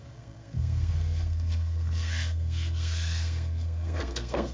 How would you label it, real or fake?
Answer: fake